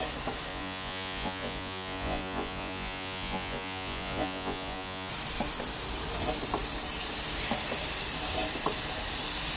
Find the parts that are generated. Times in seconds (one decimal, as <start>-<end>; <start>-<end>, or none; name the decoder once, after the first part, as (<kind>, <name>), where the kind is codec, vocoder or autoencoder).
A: 0.5-5.1 (vocoder, Vocos)